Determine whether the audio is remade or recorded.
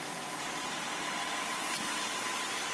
recorded